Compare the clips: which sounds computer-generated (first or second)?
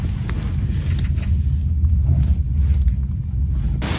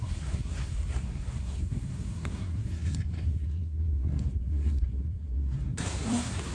second